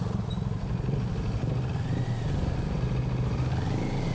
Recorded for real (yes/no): yes